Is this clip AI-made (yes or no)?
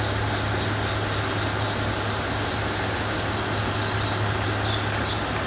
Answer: no